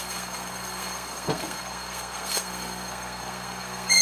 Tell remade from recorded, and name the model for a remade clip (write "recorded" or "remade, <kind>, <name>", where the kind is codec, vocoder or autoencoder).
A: remade, codec, SNAC